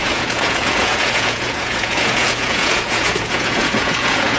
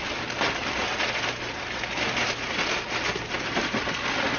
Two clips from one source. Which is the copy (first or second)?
first